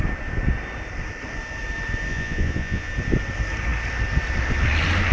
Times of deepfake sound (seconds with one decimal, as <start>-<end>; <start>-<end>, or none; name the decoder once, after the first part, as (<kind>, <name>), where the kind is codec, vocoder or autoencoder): 2.1-2.9 (vocoder, Vocos)